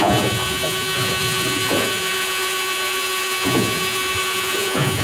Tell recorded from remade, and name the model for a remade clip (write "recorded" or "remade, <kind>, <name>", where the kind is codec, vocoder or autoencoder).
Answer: remade, vocoder, Vocos